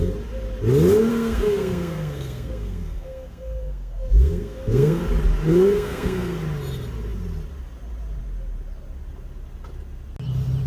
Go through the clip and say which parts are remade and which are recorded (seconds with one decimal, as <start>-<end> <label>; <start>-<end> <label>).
0.0-1.1 recorded; 1.1-5.0 remade; 5.0-5.5 recorded; 5.5-6.4 remade; 6.4-10.7 recorded